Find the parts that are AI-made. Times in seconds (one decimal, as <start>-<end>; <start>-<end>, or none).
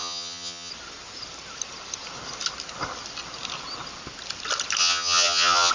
0.0-0.7; 4.8-5.7